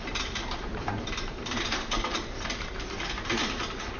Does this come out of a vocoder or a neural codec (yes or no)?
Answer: yes